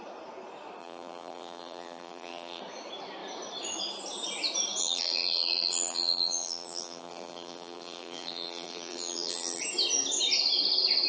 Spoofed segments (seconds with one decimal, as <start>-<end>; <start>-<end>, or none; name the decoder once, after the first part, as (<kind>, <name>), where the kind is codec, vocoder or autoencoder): 0.8-2.6 (vocoder, BigVGAN v2); 4.8-9.6